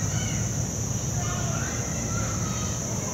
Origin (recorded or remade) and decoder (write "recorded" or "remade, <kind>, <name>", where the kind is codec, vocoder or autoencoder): remade, vocoder, BigVGAN v2